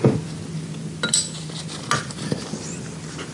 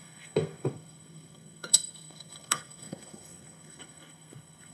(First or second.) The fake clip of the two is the second